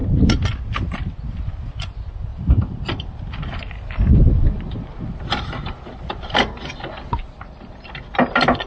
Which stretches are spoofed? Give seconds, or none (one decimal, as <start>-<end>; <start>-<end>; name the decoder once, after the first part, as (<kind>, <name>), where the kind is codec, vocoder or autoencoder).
0.0-1.5 (vocoder, BigVGAN v2); 2.3-6.3